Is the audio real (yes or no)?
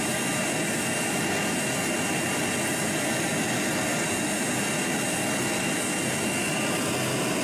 yes